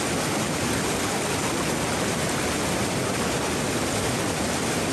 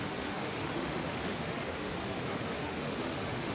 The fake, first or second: second